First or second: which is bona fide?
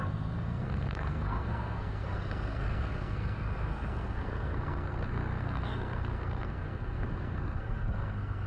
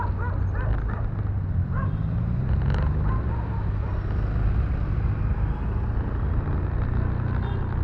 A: second